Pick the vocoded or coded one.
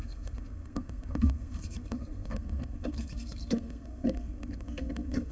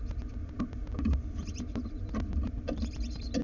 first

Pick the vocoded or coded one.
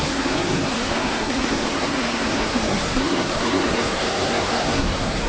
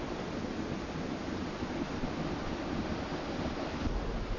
first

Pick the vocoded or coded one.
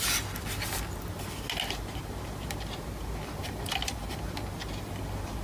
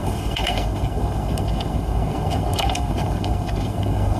second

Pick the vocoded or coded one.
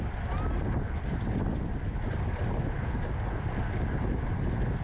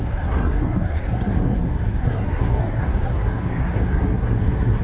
second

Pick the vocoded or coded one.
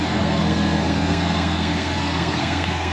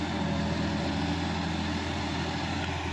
first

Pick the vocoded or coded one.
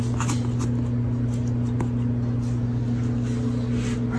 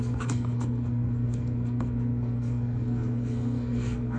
second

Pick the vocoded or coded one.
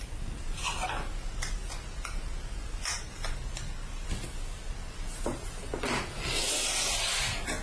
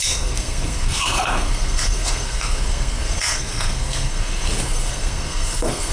second